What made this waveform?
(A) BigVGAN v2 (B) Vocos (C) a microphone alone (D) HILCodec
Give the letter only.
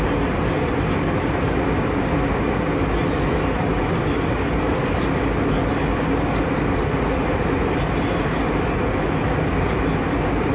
C